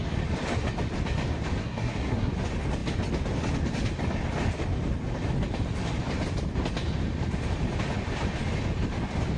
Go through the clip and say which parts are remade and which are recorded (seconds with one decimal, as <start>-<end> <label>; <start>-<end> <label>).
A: 0.0-1.6 recorded; 1.6-2.3 remade; 2.3-9.4 recorded